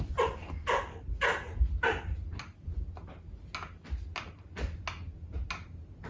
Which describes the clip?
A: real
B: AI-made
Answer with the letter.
A